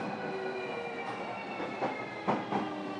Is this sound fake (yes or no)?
yes